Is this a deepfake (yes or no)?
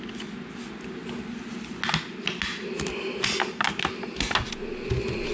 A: no